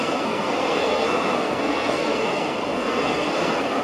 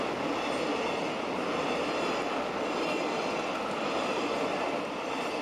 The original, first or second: second